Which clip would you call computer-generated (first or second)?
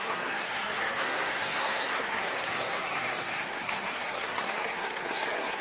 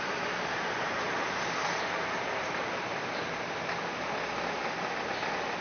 first